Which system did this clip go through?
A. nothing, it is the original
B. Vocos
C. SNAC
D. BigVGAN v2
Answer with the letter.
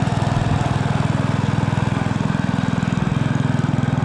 A